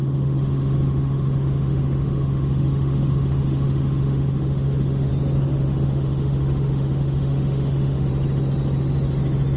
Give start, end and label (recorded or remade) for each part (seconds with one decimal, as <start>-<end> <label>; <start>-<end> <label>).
0.0-5.1 remade; 5.1-5.5 recorded; 5.5-8.1 remade; 8.1-9.6 recorded